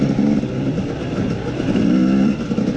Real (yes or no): yes